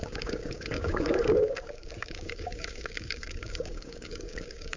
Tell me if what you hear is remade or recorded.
remade